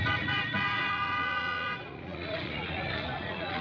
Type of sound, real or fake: fake